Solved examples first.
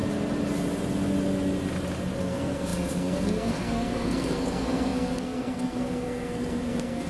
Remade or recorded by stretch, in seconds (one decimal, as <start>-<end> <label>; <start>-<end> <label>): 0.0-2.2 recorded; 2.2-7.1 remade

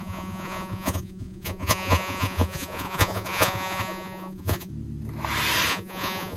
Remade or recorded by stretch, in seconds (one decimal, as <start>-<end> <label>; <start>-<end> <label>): 0.0-4.7 remade; 4.7-5.7 recorded; 5.7-6.4 remade

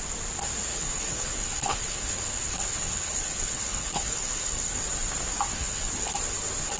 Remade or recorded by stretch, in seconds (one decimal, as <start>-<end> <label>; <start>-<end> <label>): 0.0-0.7 recorded; 0.7-4.8 remade; 4.8-5.5 recorded; 5.5-6.1 remade; 6.1-6.8 recorded

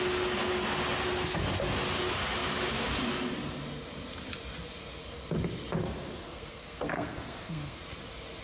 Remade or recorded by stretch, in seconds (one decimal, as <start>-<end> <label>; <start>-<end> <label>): 0.0-5.8 recorded; 5.8-7.8 remade; 7.8-8.4 recorded

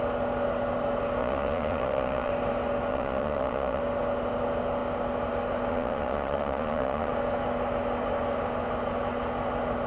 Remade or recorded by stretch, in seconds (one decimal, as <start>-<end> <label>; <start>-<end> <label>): 0.0-1.2 recorded; 1.2-2.3 remade; 2.3-2.9 recorded; 2.9-3.8 remade; 3.8-5.7 recorded; 5.7-7.1 remade; 7.1-9.9 recorded

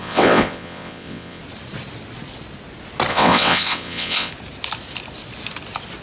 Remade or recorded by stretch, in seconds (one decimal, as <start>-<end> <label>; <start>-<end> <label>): 0.0-1.4 remade; 1.4-3.1 recorded; 3.1-4.3 remade; 4.3-6.0 recorded